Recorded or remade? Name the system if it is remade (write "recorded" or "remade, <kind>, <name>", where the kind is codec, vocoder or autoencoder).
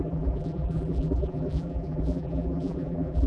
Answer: remade, vocoder, BigVGAN v2